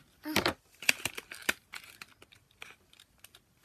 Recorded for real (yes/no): yes